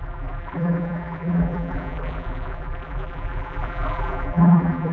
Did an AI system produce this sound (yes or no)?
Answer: yes